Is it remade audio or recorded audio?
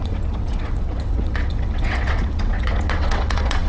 remade